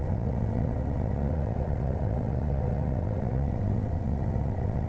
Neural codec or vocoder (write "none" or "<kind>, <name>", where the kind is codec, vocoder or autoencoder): vocoder, WaveNeXt